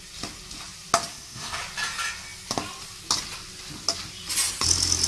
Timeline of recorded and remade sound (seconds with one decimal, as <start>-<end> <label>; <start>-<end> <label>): 0.0-1.1 recorded; 1.1-1.6 remade; 1.6-5.1 recorded

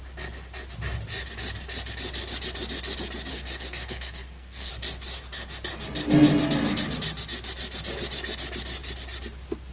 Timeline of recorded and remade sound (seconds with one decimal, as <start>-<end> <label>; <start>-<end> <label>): 0.0-3.3 recorded; 3.3-4.7 remade; 4.7-9.7 recorded

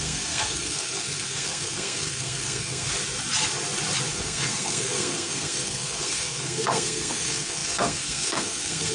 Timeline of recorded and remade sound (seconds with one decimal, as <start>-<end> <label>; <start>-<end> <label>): 0.0-2.9 remade; 2.9-4.1 recorded; 4.1-8.9 remade

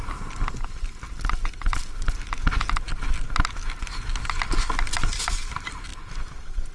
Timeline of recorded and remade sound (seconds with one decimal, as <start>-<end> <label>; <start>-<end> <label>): 0.0-6.7 recorded

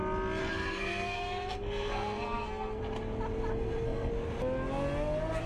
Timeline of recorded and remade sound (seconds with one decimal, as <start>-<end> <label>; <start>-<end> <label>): 0.0-0.4 recorded; 0.4-2.8 remade; 2.8-3.5 recorded; 3.5-4.1 remade; 4.1-5.5 recorded